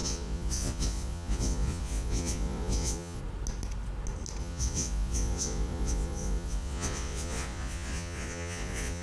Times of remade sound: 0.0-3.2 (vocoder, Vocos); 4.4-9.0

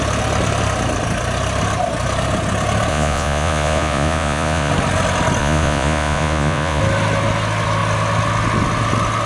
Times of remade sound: 2.9-4.7 (vocoder, Vocos); 5.4-6.8

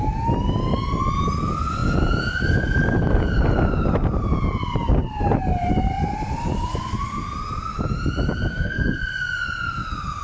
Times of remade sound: 8.5-9.1 (codec, SNAC)

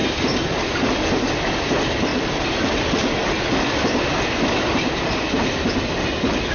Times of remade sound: 2.1-2.8 (vocoder, BigVGAN v2); 3.2-6.1

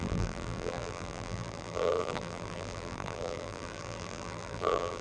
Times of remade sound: 0.0-5.0 (vocoder, BigVGAN v2)

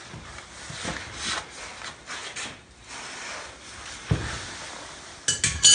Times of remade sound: none

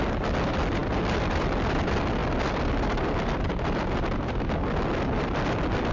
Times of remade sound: none